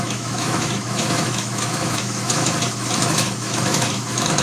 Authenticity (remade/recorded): remade